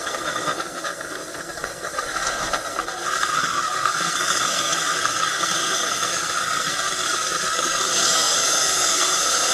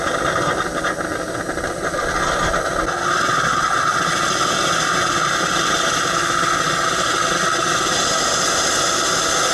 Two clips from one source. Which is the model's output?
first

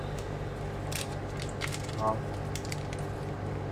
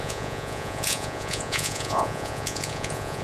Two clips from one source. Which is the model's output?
second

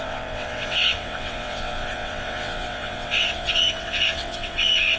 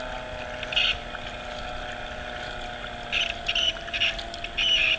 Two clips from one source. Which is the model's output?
first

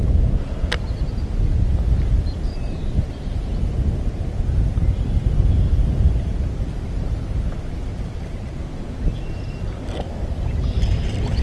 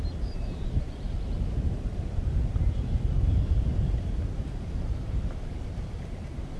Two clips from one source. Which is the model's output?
second